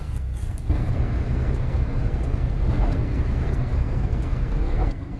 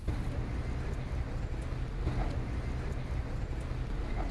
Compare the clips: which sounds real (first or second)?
second